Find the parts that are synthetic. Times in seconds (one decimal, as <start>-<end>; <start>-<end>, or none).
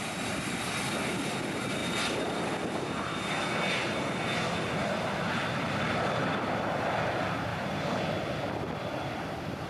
1.8-2.4; 7.5-8.0